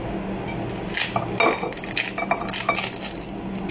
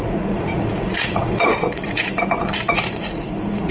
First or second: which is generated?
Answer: second